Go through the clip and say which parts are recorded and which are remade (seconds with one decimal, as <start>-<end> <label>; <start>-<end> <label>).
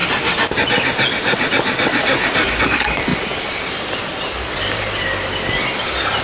0.0-6.2 recorded